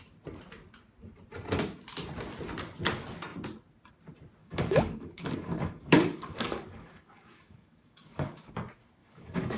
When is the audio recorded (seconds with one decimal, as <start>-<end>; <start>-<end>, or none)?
0.0-4.4; 8.5-9.0